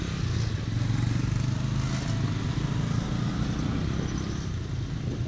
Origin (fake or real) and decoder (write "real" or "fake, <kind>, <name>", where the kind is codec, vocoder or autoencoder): real